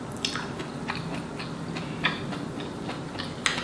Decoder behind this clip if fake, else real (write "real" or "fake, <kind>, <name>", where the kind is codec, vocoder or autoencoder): real